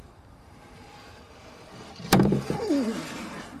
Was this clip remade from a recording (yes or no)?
yes